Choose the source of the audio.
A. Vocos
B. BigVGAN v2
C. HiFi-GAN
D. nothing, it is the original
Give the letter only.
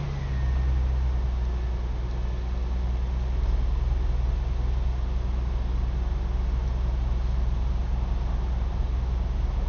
D